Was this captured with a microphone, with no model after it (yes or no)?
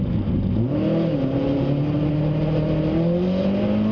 yes